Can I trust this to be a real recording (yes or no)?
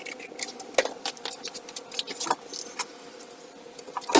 yes